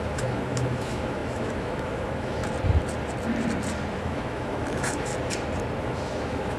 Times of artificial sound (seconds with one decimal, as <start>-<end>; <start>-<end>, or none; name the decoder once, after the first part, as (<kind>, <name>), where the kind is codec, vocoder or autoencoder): 0.0-2.4 (autoencoder, DAC-VAE); 4.0-5.1; 5.8-6.6